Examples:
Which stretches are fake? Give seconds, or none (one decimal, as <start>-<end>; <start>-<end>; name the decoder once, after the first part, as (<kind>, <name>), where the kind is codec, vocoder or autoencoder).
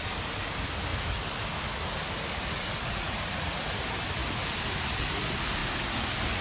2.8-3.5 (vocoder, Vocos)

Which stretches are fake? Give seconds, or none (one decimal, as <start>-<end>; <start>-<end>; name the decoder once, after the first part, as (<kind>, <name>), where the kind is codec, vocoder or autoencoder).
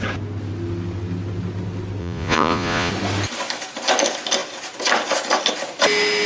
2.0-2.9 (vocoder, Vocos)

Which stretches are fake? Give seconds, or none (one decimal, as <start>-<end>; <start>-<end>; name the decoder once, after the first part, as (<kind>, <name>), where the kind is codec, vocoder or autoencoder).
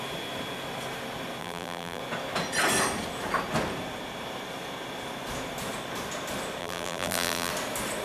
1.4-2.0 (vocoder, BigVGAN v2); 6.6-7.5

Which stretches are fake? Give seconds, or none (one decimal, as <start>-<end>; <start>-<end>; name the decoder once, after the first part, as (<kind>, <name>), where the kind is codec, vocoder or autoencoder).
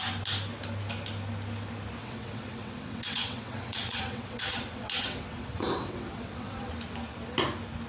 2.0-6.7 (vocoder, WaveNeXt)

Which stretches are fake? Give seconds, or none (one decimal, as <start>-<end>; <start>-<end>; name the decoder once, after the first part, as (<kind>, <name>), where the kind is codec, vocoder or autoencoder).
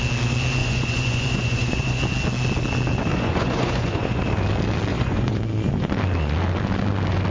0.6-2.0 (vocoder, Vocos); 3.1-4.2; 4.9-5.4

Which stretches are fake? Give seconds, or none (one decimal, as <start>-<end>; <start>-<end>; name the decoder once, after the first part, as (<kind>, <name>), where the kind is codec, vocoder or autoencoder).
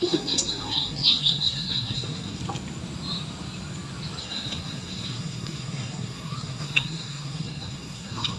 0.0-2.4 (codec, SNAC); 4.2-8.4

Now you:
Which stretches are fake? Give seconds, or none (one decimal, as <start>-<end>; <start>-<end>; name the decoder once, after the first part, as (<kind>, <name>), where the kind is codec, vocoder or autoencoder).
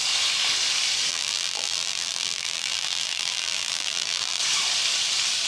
1.1-4.4 (vocoder, BigVGAN v2)